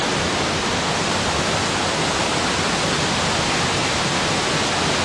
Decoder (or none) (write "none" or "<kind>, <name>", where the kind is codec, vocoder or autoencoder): none